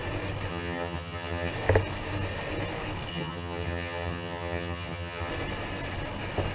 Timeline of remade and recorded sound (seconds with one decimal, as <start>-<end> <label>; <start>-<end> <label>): 0.0-0.5 recorded; 0.5-1.5 remade; 1.5-3.1 recorded; 3.1-5.3 remade; 5.3-6.5 recorded